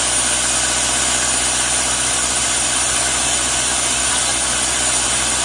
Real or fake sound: real